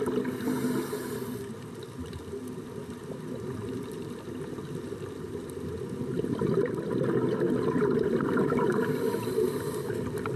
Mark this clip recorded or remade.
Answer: recorded